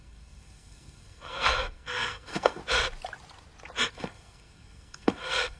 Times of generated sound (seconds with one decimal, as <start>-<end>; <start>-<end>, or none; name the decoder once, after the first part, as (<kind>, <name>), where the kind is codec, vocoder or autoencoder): 0.0-2.6 (codec, SNAC); 3.9-5.6